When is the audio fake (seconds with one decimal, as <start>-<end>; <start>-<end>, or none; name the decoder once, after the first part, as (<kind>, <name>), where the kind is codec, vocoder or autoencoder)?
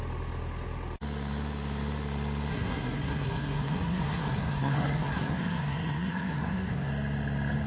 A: 2.5-6.9 (codec, SNAC)